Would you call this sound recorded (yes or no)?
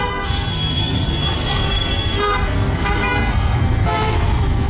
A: no